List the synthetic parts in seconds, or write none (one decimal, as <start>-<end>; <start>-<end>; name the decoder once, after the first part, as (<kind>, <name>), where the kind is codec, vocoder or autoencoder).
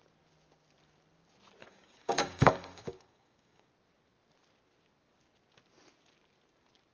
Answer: 1.6-3.7 (codec, DAC)